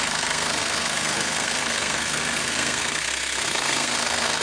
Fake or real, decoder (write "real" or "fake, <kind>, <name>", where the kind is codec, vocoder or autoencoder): fake, codec, SNAC